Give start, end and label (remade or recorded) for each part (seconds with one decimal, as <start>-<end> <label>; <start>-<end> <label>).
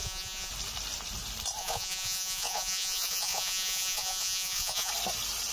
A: 0.0-0.5 remade; 0.5-1.6 recorded; 1.6-4.9 remade; 4.9-5.5 recorded